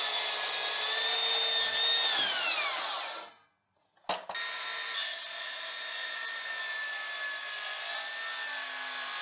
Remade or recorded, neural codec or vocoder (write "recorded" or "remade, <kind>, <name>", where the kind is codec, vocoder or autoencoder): recorded